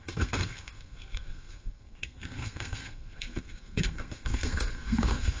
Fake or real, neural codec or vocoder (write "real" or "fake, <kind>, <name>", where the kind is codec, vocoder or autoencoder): fake, codec, SNAC